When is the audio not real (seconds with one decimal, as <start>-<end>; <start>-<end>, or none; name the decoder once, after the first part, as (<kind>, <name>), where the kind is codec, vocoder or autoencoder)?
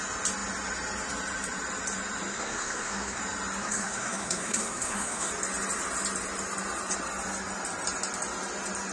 2.3-3.2 (codec, SNAC); 3.6-5.3